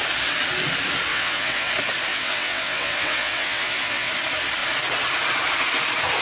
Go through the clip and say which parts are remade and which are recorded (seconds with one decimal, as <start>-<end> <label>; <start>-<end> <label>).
0.0-1.1 recorded; 1.1-1.7 remade; 1.7-2.1 recorded; 2.1-4.1 remade; 4.1-6.2 recorded